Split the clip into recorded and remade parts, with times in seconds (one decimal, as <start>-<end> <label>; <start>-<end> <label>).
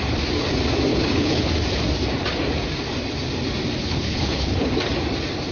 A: 0.0-0.9 recorded; 0.9-1.5 remade; 1.5-3.8 recorded; 3.8-4.7 remade; 4.7-5.5 recorded